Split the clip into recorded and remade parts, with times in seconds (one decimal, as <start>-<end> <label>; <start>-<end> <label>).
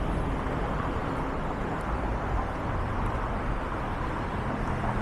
0.0-5.0 recorded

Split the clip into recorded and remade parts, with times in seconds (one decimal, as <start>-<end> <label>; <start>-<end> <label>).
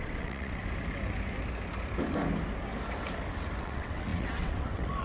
0.0-0.6 remade; 0.6-3.6 recorded; 3.6-5.0 remade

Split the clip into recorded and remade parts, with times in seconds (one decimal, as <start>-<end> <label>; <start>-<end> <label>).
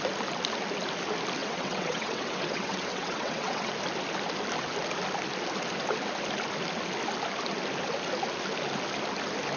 0.0-1.4 recorded; 1.4-3.7 remade; 3.7-9.6 recorded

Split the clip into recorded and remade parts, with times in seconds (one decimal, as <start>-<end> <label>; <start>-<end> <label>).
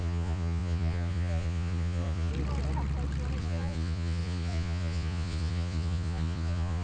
0.0-2.3 remade; 2.3-3.4 recorded; 3.4-6.8 remade